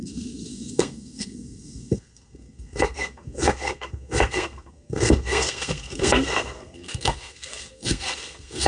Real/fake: fake